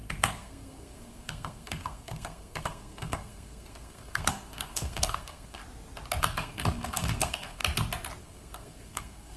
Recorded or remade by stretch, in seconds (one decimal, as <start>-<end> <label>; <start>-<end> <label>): 0.0-5.6 remade; 5.6-6.2 recorded; 6.2-7.6 remade; 7.6-8.2 recorded; 8.2-9.4 remade